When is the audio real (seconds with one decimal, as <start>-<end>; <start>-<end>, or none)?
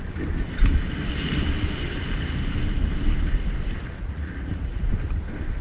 0.0-4.0; 4.9-5.6